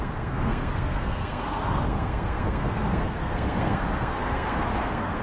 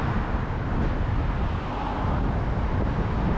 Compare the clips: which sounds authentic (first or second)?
second